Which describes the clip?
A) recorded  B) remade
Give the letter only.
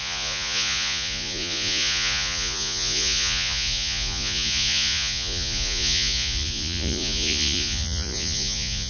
B